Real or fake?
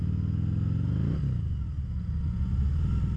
real